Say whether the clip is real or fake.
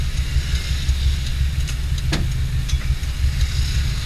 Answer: real